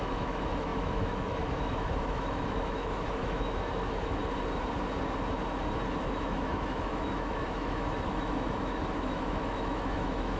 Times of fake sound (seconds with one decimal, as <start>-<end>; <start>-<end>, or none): 0.0-4.2; 6.0-10.4